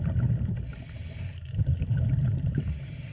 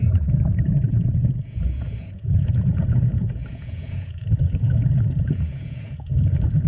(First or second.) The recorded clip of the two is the first